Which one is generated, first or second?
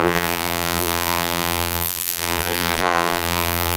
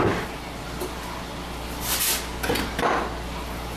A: first